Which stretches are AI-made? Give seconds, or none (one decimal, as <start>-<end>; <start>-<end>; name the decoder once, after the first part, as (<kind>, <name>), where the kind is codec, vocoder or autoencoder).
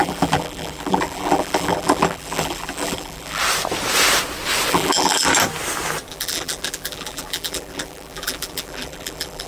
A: 0.0-3.4 (vocoder, BigVGAN v2); 4.7-5.3; 6.1-9.5